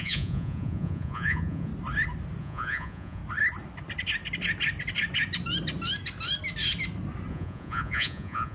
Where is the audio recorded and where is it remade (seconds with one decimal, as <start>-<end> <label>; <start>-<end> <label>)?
0.0-1.7 remade; 1.7-2.4 recorded; 2.4-3.2 remade; 3.2-7.3 recorded; 7.3-8.5 remade